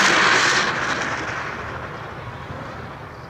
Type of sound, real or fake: real